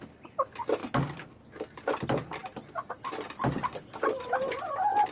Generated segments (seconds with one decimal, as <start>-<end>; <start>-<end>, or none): none

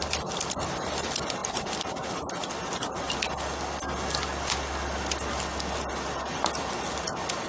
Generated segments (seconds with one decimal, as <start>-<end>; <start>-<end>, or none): none

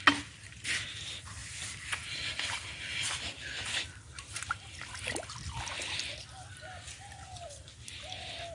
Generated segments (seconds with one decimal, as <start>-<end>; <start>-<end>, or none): none

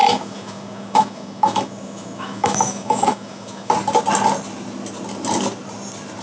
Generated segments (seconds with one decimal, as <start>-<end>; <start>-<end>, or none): 0.0-3.7

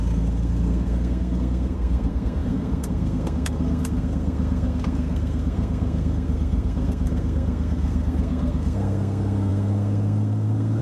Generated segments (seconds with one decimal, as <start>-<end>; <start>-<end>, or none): 0.0-10.8

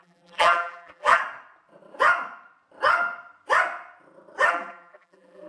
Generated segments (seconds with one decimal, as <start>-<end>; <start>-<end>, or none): 0.0-1.2; 4.5-5.5

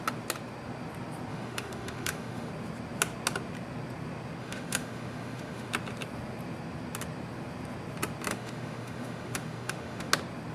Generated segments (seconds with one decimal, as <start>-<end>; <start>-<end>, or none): 1.3-2.5; 4.4-5.7; 8.3-10.1